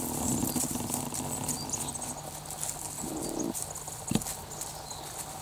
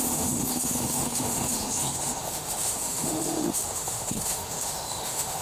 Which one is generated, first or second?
second